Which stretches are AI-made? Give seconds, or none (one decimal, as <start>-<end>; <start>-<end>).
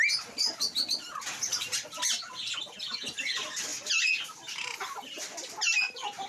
none